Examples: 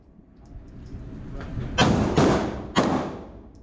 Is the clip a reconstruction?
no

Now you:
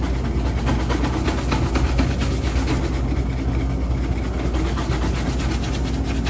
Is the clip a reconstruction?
no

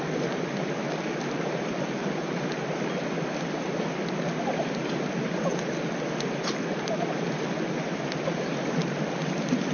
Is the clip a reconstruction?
no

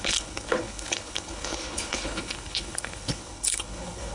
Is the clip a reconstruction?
yes